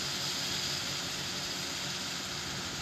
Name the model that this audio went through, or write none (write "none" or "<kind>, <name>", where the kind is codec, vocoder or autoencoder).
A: none